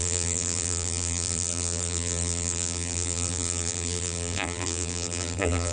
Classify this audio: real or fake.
fake